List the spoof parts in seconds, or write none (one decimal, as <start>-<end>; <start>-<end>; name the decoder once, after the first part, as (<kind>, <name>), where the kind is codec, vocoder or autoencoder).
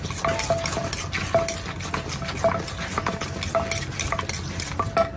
none